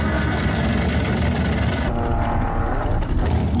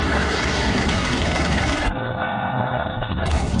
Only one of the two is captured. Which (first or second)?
first